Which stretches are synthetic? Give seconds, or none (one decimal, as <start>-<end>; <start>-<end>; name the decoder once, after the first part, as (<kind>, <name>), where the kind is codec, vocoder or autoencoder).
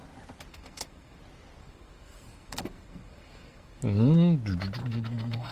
0.5-1.2 (codec, SNAC); 1.6-3.8; 4.8-5.5